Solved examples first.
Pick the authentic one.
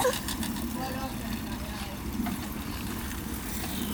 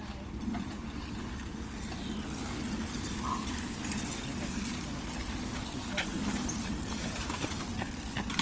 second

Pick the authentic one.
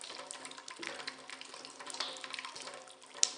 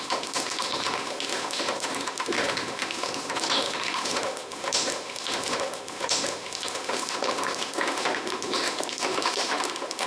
first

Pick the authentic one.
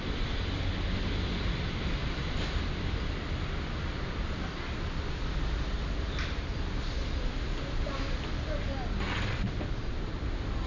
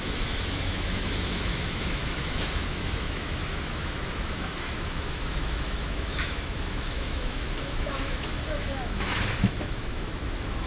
first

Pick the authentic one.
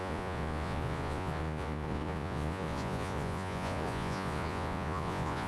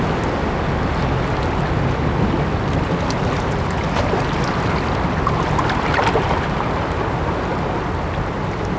second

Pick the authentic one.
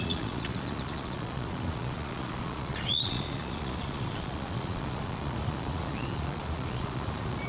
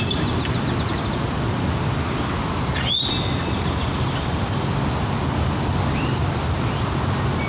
second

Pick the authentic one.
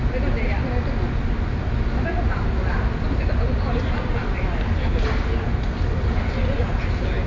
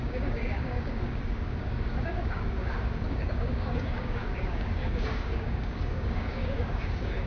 first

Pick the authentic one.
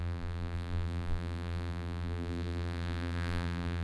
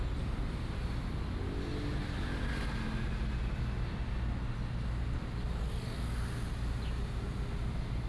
second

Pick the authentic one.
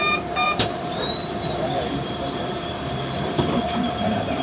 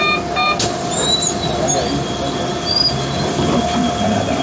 second